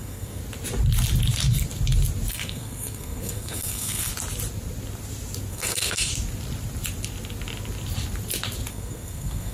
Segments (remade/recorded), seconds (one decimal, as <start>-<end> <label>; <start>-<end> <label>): 0.0-0.4 remade; 0.4-2.3 recorded; 2.3-4.1 remade; 4.1-5.5 recorded; 5.5-6.1 remade; 6.1-8.7 recorded; 8.7-9.5 remade